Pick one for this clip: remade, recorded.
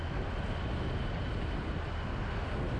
recorded